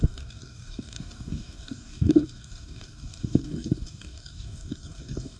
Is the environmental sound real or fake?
fake